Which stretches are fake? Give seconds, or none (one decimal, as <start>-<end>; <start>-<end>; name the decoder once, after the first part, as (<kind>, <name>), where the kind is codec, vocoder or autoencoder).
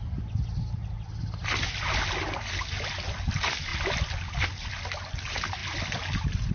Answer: none